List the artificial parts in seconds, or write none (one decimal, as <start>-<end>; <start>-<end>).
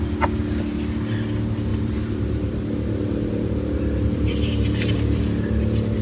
1.7-5.2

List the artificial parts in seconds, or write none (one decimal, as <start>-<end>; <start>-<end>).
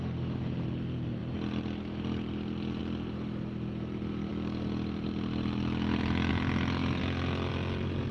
none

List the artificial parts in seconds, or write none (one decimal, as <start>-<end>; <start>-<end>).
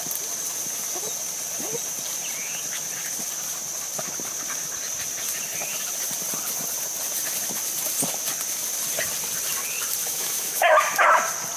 10.0-10.8